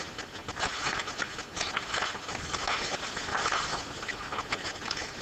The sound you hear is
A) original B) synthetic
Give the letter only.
A